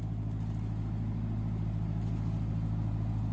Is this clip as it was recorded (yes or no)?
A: yes